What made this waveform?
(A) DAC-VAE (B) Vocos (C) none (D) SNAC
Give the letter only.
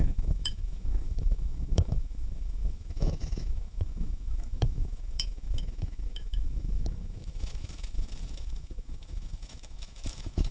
A